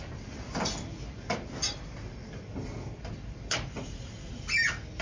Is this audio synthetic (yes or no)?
no